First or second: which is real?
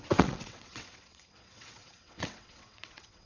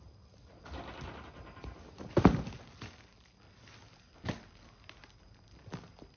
second